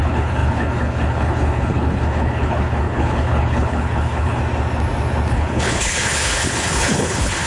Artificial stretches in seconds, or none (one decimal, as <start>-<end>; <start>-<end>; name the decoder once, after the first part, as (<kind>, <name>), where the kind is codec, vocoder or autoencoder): 0.0-4.4 (codec, HILCodec); 5.3-7.5